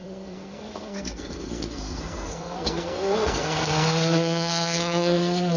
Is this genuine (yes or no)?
no